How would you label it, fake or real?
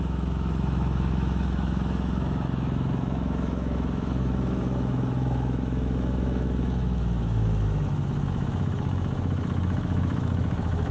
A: fake